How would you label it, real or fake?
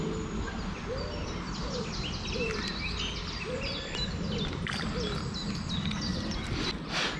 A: real